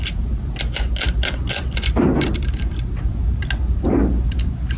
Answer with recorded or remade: recorded